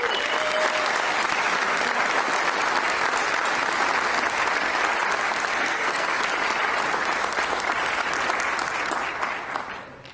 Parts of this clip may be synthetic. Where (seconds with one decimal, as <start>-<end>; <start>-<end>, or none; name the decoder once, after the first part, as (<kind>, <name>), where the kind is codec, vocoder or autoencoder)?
5.5-6.2 (codec, SNAC)